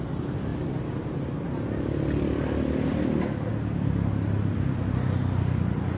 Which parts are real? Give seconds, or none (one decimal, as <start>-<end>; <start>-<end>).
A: 0.0-6.0